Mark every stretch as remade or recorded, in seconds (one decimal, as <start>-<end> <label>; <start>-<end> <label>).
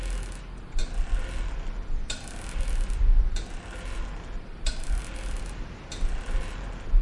0.0-7.0 recorded